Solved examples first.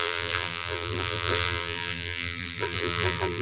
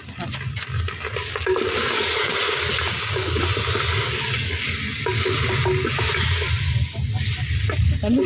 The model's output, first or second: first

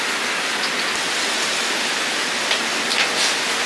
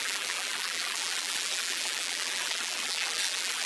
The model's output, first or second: second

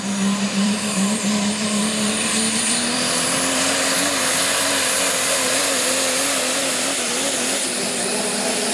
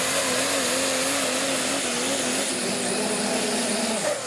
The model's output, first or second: first